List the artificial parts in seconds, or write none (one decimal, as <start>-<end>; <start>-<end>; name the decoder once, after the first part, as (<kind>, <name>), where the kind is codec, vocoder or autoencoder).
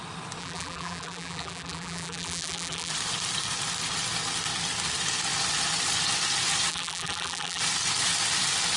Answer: 0.4-2.9 (vocoder, BigVGAN v2); 6.7-7.6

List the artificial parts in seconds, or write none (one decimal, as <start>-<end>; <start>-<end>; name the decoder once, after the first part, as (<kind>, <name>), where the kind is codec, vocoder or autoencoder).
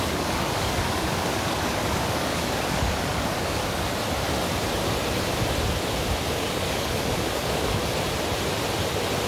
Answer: 0.0-3.6 (codec, DAC); 6.4-7.8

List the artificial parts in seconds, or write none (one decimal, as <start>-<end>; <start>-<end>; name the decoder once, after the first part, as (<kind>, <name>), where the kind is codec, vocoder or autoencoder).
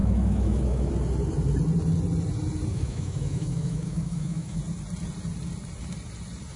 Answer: 0.0-0.9 (autoencoder, DAC-VAE); 2.7-4.6